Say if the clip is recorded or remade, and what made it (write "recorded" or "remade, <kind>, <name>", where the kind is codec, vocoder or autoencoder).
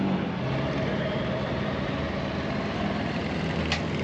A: recorded